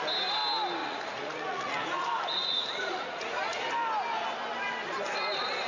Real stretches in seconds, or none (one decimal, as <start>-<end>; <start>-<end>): 0.0-0.8; 3.6-5.7